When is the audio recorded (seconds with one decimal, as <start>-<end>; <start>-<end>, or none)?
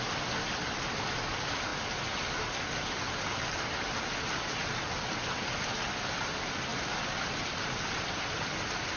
0.0-9.0